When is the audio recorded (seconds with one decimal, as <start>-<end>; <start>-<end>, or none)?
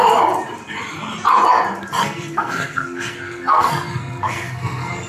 0.0-2.0